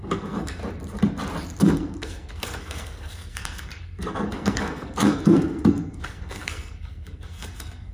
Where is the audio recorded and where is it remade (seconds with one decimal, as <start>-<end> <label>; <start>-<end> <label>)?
0.0-0.6 remade; 0.6-1.6 recorded; 1.6-7.9 remade